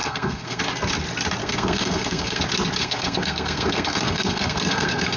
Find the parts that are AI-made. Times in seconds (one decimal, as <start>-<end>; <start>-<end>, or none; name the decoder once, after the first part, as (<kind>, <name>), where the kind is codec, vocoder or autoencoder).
0.0-0.6 (codec, SNAC); 1.4-2.4; 2.8-5.2